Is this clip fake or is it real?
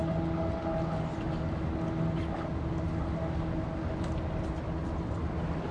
real